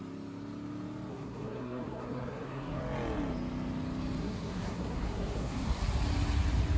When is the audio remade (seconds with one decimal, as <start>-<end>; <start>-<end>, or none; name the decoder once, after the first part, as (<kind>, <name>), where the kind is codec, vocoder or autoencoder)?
1.1-2.8 (codec, SNAC); 4.2-5.8